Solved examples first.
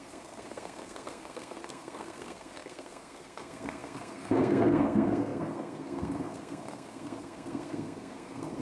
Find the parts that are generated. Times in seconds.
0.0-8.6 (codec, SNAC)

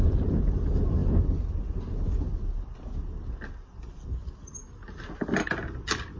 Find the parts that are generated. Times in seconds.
none